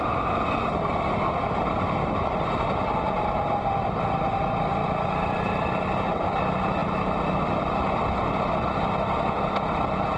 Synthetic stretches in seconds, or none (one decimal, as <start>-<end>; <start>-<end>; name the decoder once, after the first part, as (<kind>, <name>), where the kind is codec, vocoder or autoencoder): 4.8-5.8 (vocoder, BigVGAN v2); 6.8-7.5